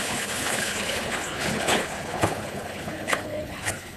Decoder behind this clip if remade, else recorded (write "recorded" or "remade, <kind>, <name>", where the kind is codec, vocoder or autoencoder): remade, codec, HILCodec